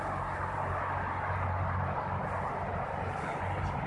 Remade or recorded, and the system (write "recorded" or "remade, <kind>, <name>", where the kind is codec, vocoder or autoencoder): recorded